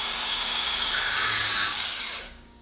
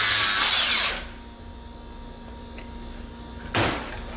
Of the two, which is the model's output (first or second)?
first